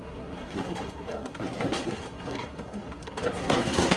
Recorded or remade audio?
remade